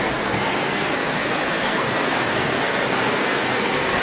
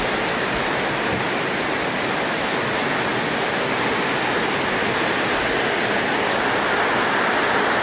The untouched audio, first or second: second